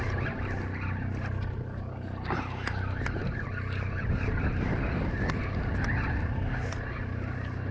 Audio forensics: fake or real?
real